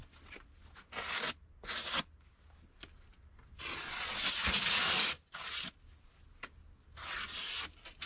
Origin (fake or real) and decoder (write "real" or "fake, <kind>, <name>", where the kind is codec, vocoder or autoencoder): real